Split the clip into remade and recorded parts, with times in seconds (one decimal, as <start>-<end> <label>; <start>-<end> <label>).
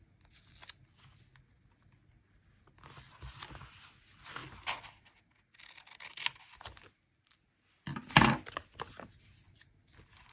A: 0.0-10.3 recorded